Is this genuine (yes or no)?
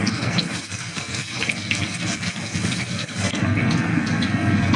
no